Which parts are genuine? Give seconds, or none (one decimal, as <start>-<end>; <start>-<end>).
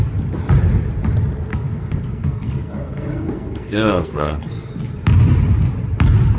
0.0-1.5; 4.7-6.4